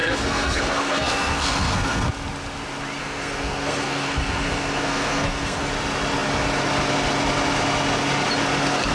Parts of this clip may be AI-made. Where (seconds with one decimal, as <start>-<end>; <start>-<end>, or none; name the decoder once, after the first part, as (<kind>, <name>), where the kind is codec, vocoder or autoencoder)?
0.0-2.1 (codec, SNAC); 3.0-5.7

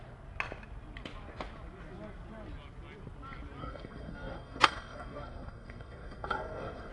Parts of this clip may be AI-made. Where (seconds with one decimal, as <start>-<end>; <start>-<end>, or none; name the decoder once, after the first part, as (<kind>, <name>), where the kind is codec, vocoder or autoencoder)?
3.6-6.9 (codec, SNAC)

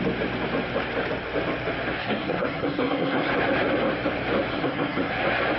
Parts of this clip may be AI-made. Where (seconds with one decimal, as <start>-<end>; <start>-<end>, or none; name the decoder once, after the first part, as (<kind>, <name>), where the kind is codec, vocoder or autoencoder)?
2.0-3.3 (codec, SNAC); 4.5-5.1

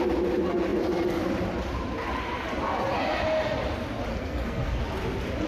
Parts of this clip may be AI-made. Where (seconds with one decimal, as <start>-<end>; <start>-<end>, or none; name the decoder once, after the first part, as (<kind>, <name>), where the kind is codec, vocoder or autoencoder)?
4.1-4.8 (codec, SNAC)

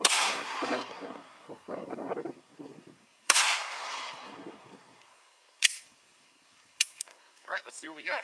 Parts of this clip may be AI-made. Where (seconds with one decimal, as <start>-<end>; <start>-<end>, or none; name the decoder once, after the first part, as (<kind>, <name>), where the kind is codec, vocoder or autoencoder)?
0.0-8.2 (codec, SNAC)